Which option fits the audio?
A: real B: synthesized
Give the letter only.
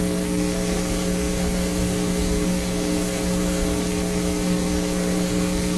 B